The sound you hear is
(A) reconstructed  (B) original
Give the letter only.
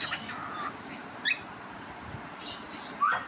B